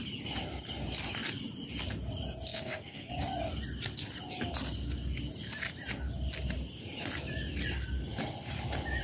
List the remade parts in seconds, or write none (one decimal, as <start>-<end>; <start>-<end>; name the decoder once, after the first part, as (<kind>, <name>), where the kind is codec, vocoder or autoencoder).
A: 2.5-3.1 (codec, DAC)